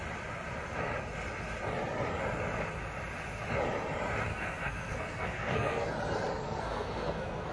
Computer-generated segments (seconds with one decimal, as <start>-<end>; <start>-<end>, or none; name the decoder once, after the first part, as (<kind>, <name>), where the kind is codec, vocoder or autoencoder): 4.3-5.9 (codec, SNAC); 6.4-7.5